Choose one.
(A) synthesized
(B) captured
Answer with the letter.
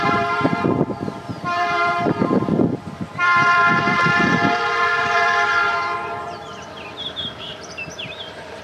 A